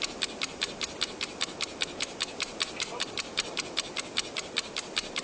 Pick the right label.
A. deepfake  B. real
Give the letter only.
B